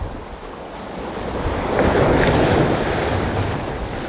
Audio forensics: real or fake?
real